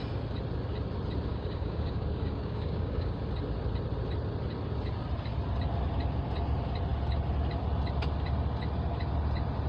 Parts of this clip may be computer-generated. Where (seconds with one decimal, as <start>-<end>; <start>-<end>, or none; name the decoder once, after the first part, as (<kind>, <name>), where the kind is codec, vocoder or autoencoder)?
1.3-3.2 (codec, DAC)